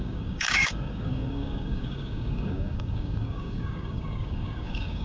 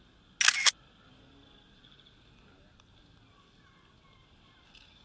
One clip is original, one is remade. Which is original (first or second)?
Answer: second